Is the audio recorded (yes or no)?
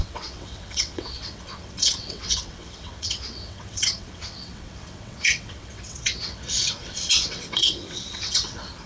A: no